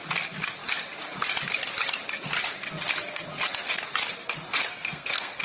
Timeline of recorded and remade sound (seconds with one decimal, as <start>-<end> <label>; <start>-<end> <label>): 0.0-4.6 recorded; 4.6-5.4 remade

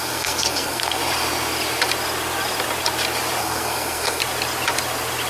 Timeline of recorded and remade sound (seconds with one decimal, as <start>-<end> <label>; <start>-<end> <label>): 0.0-1.0 remade; 1.0-3.4 recorded; 3.4-4.2 remade; 4.2-5.3 recorded